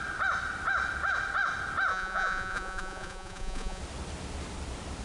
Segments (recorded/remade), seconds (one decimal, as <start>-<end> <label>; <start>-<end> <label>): 0.0-1.9 recorded; 1.9-3.8 remade; 3.8-5.0 recorded